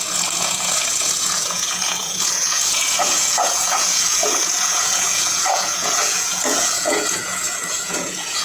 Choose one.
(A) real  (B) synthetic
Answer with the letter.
B